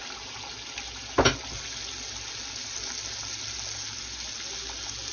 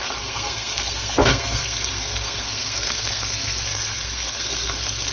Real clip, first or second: first